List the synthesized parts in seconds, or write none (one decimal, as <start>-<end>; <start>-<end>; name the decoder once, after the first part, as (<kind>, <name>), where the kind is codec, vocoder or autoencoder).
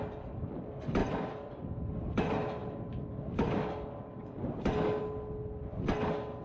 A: 1.0-1.7 (vocoder, BigVGAN v2)